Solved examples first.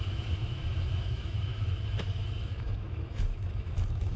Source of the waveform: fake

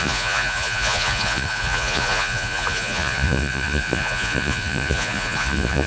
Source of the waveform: fake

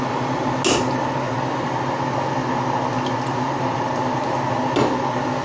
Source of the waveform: real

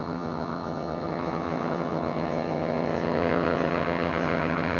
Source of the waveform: fake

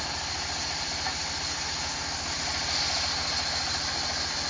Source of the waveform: real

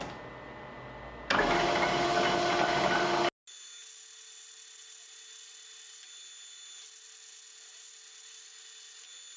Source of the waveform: real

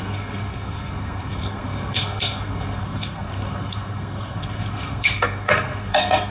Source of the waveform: fake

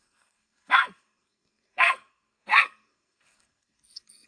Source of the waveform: fake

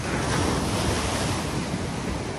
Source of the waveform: real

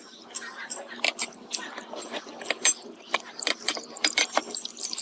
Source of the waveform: fake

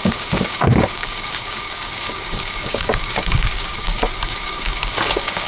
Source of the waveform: fake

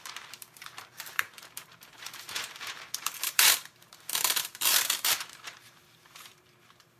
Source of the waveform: fake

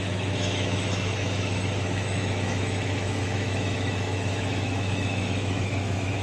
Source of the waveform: fake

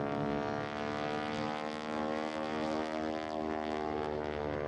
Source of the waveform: real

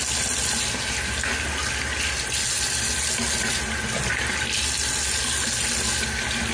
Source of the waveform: real